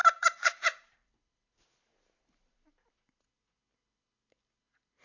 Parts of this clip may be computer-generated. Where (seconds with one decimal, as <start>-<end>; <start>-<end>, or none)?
0.0-2.9